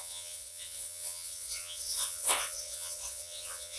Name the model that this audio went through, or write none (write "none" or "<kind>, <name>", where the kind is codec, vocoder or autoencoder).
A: vocoder, WaveNeXt